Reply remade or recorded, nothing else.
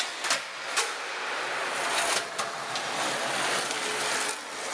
recorded